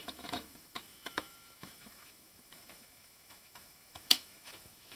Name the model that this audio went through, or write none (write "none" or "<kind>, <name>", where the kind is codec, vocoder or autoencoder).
autoencoder, DAC-VAE